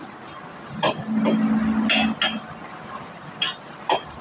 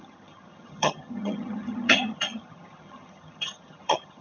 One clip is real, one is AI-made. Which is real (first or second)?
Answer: first